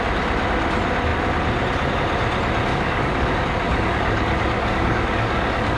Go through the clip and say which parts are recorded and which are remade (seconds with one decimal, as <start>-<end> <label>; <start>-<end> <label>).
0.0-2.7 recorded; 2.7-5.8 remade